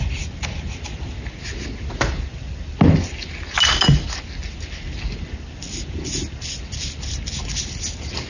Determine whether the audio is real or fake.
real